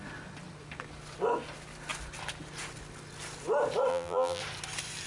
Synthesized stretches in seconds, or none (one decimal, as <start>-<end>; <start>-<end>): 3.9-4.4

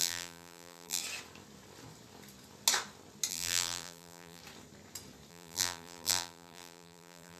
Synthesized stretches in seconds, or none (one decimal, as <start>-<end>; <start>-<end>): 0.0-1.0; 3.3-4.4; 5.3-7.4

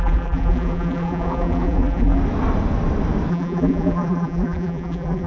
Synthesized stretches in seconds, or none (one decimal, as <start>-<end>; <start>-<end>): 0.0-2.2; 3.3-5.3

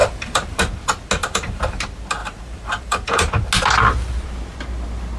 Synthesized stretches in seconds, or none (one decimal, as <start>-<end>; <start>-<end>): 0.0-0.6; 1.2-1.8; 2.2-3.3